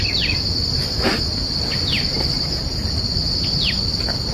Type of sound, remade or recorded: recorded